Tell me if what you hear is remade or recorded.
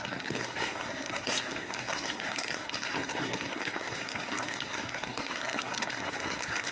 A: remade